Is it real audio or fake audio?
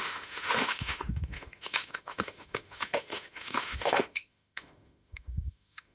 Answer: fake